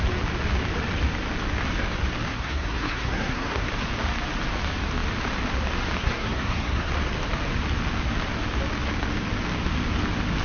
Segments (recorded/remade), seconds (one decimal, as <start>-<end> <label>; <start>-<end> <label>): 0.0-2.3 recorded; 2.3-3.7 remade; 3.7-6.0 recorded; 6.0-6.9 remade; 6.9-10.4 recorded